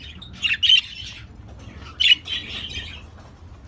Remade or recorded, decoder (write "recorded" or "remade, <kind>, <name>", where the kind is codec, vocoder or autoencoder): recorded